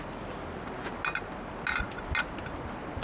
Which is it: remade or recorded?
recorded